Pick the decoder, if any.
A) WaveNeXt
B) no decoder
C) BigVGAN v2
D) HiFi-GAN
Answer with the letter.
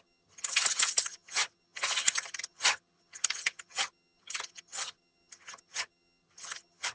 D